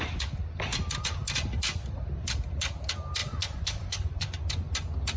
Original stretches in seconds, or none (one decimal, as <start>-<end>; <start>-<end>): 0.0-3.2; 4.7-5.2